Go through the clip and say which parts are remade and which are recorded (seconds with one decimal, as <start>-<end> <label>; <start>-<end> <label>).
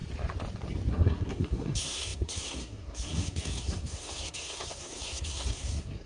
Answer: 0.0-0.9 recorded; 0.9-6.1 remade